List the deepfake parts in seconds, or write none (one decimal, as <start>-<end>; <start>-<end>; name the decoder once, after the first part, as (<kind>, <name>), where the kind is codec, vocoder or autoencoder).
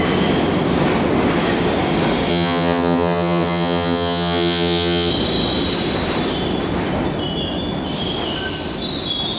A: 2.3-5.1 (vocoder, HiFi-GAN)